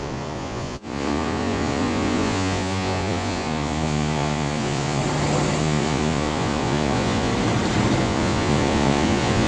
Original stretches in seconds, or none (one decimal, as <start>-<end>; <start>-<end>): 5.0-5.6; 7.3-8.0